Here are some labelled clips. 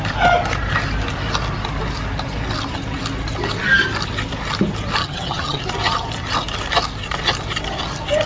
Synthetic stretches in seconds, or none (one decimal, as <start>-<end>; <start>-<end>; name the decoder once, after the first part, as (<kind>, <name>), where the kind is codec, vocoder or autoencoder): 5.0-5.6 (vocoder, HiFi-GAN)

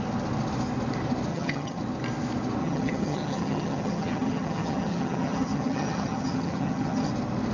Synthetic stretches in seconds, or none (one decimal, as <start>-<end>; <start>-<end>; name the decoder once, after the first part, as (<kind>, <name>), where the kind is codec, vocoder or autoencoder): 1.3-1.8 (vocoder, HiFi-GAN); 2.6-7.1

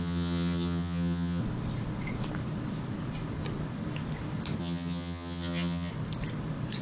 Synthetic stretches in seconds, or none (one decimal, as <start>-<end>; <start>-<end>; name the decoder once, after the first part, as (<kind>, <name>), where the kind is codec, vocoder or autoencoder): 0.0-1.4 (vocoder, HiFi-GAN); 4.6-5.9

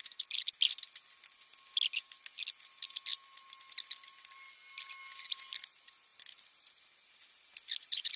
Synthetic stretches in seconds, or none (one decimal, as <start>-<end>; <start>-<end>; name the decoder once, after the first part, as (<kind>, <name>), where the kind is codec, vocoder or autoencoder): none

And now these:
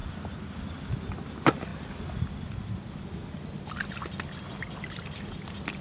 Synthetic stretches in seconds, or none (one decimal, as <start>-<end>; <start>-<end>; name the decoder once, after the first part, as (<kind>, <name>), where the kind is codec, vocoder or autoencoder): none